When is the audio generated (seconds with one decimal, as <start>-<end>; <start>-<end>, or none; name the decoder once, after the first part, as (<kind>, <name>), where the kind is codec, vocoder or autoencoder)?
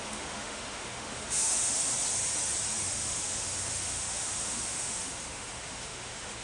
0.0-1.9 (autoencoder, DAC-VAE); 2.8-6.4